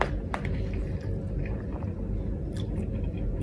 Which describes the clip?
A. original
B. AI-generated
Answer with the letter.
A